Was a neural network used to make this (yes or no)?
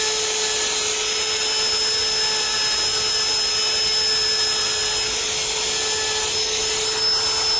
no